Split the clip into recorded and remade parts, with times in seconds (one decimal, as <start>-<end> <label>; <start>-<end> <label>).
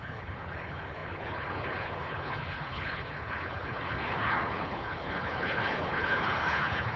0.0-7.0 remade